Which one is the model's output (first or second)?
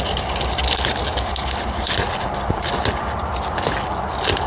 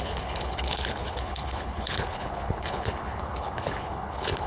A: second